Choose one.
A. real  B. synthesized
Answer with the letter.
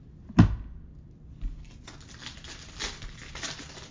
A